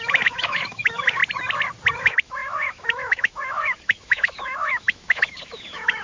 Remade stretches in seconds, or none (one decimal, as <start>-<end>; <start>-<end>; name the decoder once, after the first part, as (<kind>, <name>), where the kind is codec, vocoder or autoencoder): 0.0-1.2 (autoencoder, DAC-VAE); 2.0-6.0